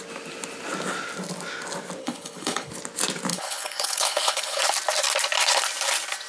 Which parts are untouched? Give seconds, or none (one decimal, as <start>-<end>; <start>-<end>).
0.0-2.0; 2.7-3.3; 4.6-6.3